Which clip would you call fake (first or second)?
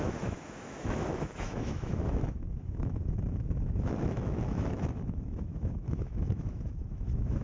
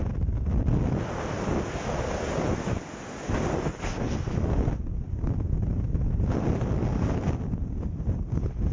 first